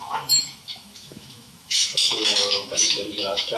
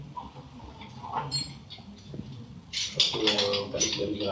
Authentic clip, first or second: second